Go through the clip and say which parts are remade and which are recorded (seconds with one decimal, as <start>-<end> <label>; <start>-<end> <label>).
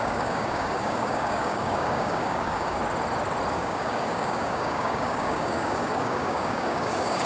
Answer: 0.0-2.8 remade; 2.8-3.5 recorded; 3.5-7.3 remade